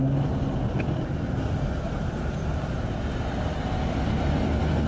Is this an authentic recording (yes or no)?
yes